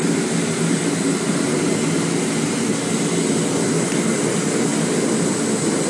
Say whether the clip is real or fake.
real